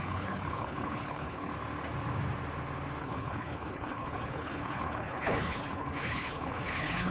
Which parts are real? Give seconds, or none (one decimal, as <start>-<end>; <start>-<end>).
1.5-3.0